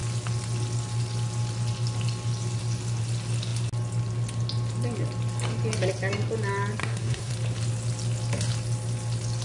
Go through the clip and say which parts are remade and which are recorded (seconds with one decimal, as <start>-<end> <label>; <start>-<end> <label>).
0.0-6.8 recorded; 6.8-7.3 remade; 7.3-9.4 recorded